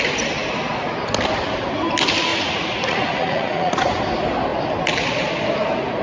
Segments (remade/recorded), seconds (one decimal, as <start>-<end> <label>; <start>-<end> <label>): 0.0-2.3 recorded; 2.3-4.0 remade; 4.0-6.0 recorded